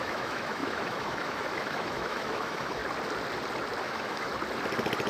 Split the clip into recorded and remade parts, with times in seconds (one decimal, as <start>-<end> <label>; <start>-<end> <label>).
0.0-2.8 remade; 2.8-3.8 recorded; 3.8-4.3 remade; 4.3-5.1 recorded